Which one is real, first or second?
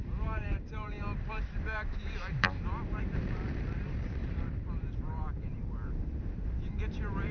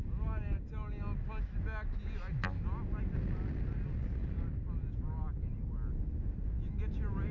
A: second